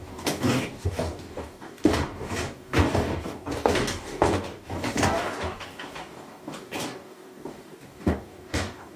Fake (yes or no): yes